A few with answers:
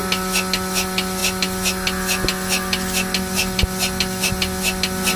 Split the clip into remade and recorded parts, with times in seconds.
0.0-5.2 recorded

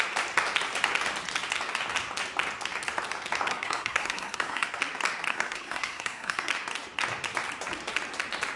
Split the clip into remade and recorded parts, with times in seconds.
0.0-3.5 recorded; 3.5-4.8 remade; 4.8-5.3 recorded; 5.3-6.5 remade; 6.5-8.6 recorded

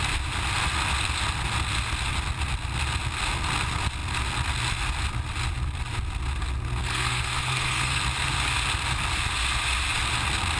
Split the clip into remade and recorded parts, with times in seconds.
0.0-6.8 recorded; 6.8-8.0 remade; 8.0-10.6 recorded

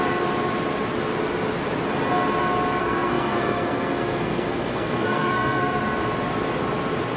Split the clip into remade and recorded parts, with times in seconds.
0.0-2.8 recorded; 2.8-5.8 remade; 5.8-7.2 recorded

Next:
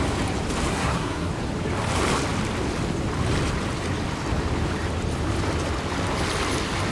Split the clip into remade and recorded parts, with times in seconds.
0.0-0.7 recorded; 0.7-1.3 remade; 1.3-6.9 recorded